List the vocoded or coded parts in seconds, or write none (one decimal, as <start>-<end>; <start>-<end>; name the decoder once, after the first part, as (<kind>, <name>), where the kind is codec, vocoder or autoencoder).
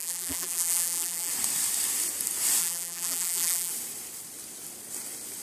0.0-1.3 (vocoder, BigVGAN v2); 2.6-3.7